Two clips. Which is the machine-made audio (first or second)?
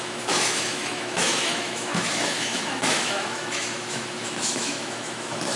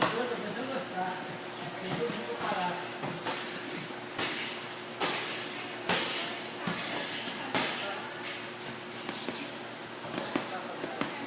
first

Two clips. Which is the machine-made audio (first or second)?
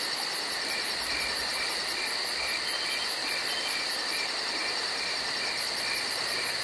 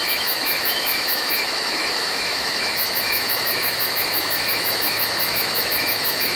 second